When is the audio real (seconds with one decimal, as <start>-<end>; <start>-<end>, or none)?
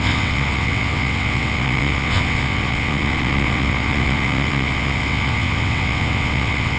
none